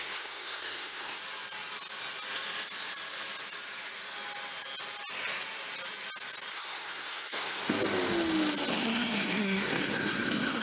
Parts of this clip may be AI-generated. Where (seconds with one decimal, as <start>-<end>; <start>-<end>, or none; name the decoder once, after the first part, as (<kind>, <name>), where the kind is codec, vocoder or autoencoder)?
0.0-1.2 (codec, SNAC); 6.5-7.6; 8.7-10.6